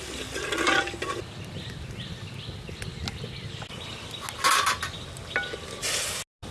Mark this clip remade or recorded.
recorded